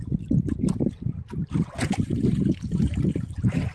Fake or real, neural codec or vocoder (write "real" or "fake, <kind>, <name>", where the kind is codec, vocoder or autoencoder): real